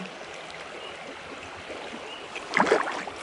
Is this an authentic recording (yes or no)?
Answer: yes